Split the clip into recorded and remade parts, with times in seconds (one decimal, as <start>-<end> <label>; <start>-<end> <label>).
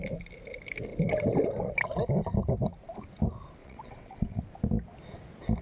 0.0-3.6 recorded; 3.6-4.4 remade; 4.4-5.6 recorded